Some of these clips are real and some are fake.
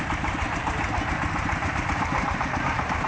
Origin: fake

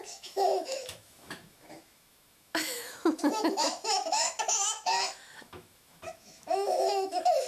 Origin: fake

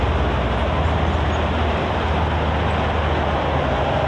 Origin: real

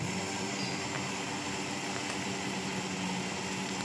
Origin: real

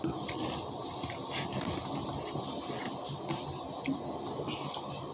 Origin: real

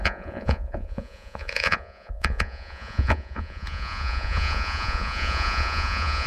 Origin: fake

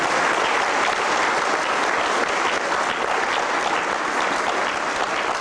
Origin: real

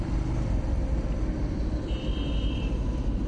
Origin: real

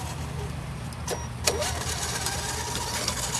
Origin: real